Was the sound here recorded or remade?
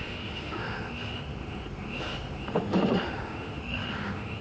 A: remade